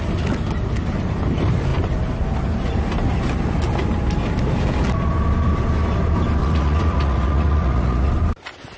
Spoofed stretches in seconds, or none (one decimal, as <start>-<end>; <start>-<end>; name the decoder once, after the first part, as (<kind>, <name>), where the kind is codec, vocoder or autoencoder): 6.4-8.1 (vocoder, Vocos)